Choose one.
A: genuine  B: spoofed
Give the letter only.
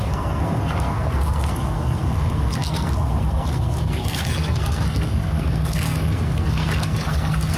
B